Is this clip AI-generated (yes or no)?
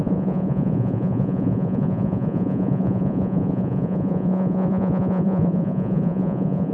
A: yes